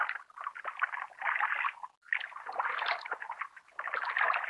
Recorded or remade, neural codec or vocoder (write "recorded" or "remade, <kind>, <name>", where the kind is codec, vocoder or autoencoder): recorded